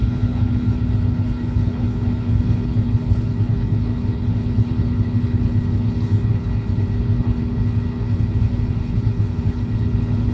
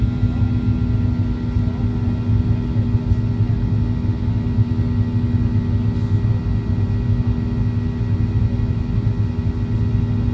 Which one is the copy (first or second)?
first